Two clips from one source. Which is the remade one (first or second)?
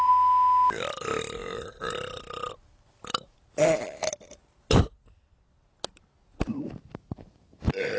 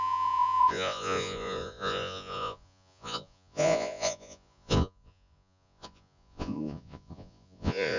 second